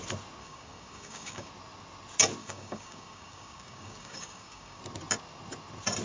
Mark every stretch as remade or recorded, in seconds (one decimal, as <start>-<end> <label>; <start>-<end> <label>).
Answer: 0.0-0.4 recorded; 0.4-1.5 remade; 1.5-2.4 recorded; 2.4-4.8 remade; 4.8-6.0 recorded